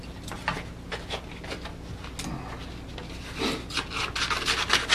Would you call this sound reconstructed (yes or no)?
no